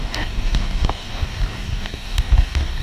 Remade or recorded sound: remade